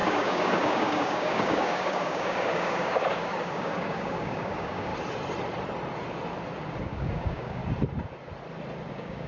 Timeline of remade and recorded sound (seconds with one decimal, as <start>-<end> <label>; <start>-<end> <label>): 0.0-4.9 remade; 4.9-6.8 recorded; 6.8-7.6 remade; 7.6-8.9 recorded; 8.9-9.3 remade